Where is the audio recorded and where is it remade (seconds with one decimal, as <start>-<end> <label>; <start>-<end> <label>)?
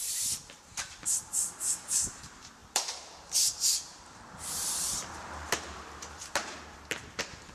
0.0-7.5 remade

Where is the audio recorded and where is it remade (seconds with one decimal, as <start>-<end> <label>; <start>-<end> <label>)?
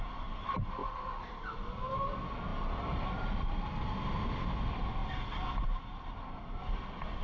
0.0-0.8 recorded; 0.8-1.9 remade; 1.9-7.2 recorded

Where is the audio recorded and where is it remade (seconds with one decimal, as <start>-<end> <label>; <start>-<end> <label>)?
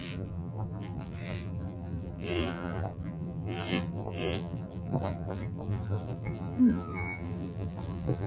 0.0-8.3 remade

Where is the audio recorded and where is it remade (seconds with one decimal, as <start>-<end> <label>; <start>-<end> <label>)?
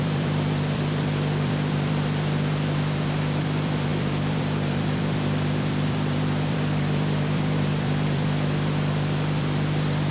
0.0-10.1 remade